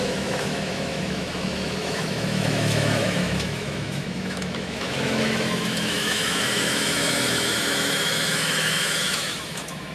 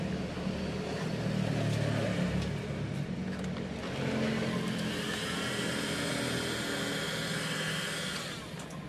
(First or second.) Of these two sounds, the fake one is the first